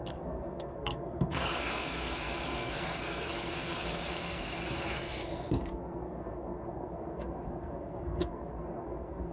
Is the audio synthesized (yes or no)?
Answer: yes